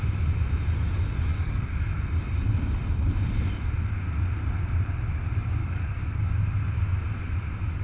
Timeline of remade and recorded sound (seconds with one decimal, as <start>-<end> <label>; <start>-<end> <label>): 0.0-1.3 recorded; 1.3-2.0 remade; 2.0-5.6 recorded; 5.6-6.3 remade; 6.3-7.8 recorded